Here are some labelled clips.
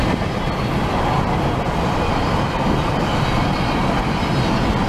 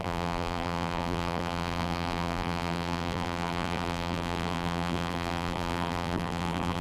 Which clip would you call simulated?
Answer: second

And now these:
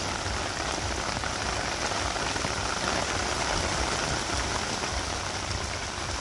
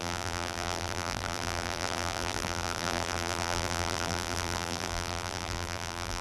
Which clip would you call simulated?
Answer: second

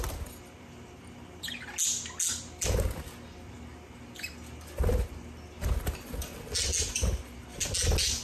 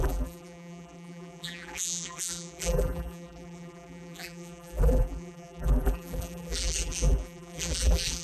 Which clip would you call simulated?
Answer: second